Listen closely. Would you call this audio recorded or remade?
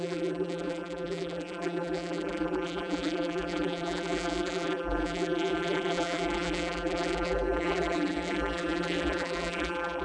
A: remade